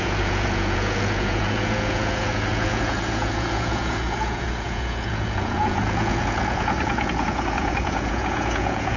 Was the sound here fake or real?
fake